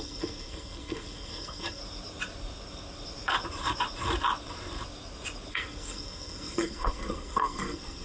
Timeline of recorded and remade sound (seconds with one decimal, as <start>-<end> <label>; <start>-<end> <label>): 0.0-1.8 remade; 1.8-5.5 recorded; 5.5-8.0 remade